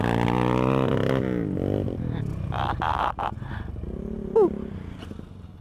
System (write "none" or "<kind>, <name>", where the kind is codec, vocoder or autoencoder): none